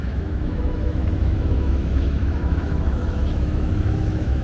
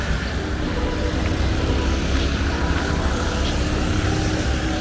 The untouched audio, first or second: second